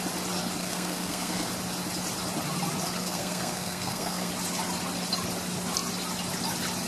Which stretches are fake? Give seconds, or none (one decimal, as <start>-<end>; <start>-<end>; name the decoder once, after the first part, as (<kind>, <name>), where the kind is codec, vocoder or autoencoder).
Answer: 0.6-1.5 (codec, SNAC); 3.0-4.3